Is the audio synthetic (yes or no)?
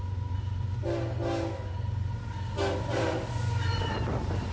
no